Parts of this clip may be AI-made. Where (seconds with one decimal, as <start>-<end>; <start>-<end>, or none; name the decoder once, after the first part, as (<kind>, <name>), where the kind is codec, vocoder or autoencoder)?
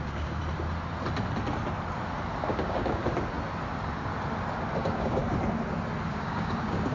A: 0.0-0.4 (codec, DAC); 2.5-3.0; 4.8-5.2; 6.1-6.9